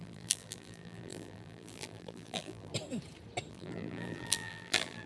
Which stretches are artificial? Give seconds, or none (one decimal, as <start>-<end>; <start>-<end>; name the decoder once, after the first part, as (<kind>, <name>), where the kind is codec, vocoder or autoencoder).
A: 0.0-2.7 (vocoder, BigVGAN v2); 3.5-5.1